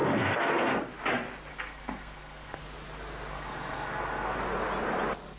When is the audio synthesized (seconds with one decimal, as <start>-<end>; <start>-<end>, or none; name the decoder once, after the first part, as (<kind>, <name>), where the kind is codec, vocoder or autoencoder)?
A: 0.0-0.8 (codec, SNAC); 1.5-2.6; 3.3-4.4